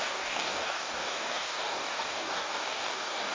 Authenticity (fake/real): fake